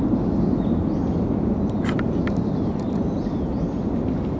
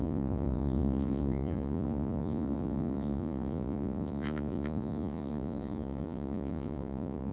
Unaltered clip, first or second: first